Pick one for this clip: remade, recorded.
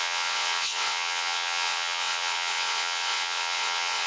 remade